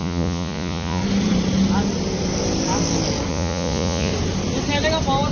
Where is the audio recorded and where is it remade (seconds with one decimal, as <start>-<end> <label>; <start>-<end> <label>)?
0.0-1.0 remade; 1.0-3.3 recorded; 3.3-4.1 remade; 4.1-5.3 recorded